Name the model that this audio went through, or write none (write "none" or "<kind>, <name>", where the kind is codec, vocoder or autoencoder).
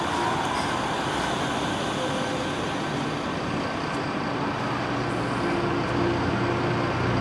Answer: none